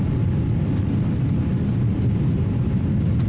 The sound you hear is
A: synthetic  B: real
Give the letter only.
B